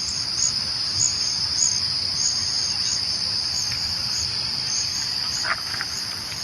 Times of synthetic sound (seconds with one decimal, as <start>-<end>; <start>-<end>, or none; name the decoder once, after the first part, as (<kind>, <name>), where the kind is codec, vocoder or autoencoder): none